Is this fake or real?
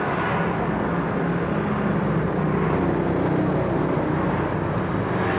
real